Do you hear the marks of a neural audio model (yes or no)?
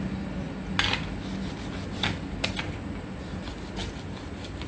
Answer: no